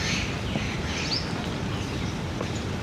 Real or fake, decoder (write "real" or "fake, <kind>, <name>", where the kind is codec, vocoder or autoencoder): fake, vocoder, BigVGAN v2